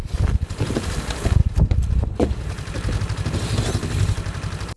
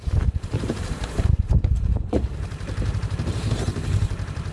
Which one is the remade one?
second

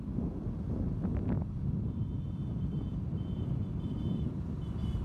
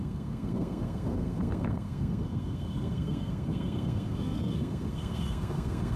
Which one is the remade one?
second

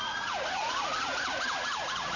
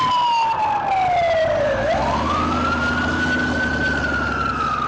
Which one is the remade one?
first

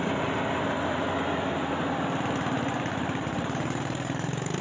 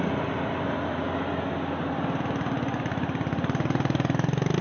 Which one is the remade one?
first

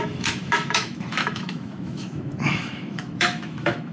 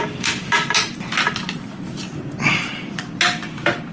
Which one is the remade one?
first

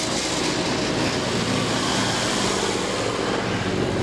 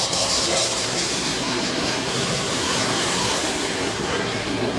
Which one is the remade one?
second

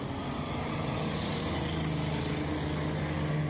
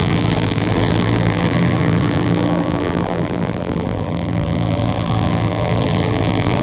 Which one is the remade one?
second